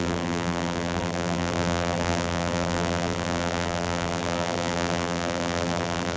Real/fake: fake